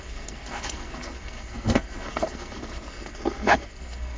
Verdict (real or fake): fake